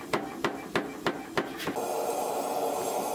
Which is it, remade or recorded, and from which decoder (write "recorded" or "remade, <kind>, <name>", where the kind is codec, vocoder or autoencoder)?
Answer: recorded